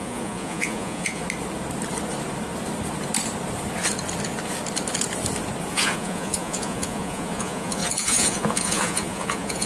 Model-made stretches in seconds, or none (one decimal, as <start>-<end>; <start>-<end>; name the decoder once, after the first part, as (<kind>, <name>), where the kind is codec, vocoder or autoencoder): 0.0-1.2 (vocoder, Vocos); 5.7-9.7